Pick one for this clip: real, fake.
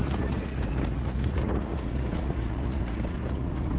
fake